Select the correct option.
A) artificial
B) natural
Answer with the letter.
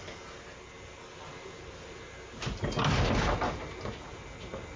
B